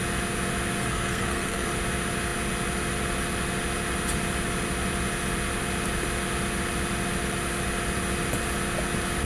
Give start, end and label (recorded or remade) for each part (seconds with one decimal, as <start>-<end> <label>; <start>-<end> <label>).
0.0-0.8 recorded; 0.8-1.7 remade; 1.7-9.3 recorded